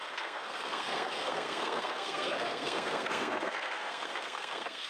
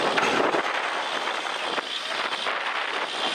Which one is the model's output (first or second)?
first